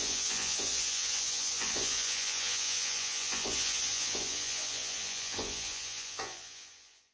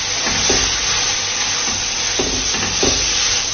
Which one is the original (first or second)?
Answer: second